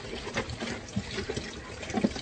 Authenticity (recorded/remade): recorded